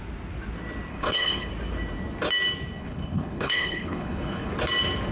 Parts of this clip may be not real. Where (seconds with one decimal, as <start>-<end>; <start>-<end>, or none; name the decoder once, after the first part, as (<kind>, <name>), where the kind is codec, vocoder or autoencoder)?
0.9-1.5 (codec, HILCodec); 2.8-4.5